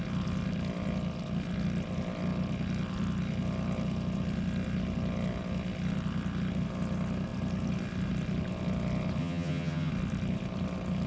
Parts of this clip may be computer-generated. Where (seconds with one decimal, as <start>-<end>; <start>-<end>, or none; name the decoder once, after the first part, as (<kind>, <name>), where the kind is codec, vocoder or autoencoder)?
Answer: 9.2-9.9 (vocoder, HiFi-GAN)